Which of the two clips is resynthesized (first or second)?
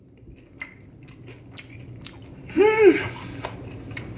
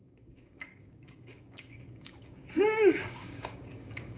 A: second